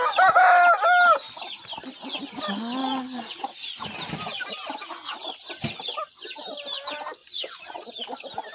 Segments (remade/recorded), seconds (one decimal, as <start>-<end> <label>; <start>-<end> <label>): 0.0-2.8 recorded; 2.8-3.8 remade; 3.8-7.2 recorded; 7.2-7.8 remade; 7.8-8.5 recorded